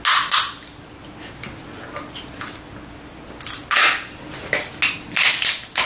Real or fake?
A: real